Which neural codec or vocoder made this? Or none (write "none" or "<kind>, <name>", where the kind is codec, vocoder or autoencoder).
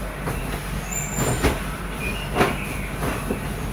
none